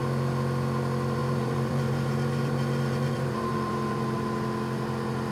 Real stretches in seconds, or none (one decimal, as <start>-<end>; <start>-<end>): 0.0-1.2; 4.3-5.3